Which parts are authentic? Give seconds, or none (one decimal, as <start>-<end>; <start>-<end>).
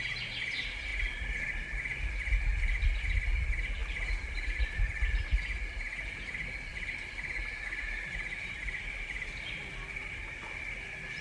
0.0-11.2